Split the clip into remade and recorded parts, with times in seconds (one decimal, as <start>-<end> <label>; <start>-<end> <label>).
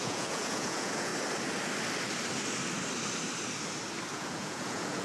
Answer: 0.0-1.1 remade; 1.1-4.1 recorded; 4.1-5.0 remade